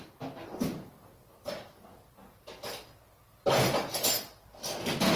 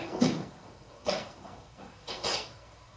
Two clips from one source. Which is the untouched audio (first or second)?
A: first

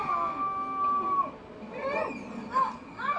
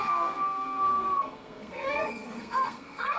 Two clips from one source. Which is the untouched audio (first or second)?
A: first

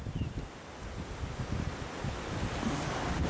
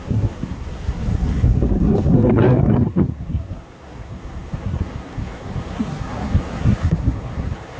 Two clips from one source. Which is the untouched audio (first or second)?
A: first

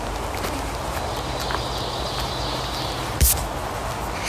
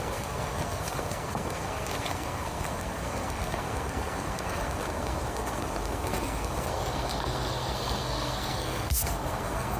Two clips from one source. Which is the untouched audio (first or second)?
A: first